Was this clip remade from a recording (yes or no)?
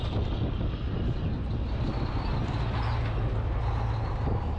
no